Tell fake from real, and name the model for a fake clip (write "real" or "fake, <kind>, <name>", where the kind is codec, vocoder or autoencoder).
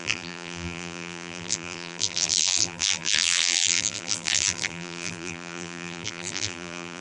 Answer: fake, vocoder, BigVGAN v2